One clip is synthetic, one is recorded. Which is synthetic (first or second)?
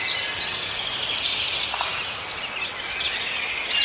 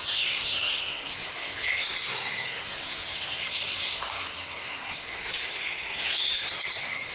second